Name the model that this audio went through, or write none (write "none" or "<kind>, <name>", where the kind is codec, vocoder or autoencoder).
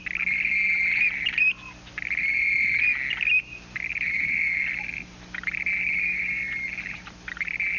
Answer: none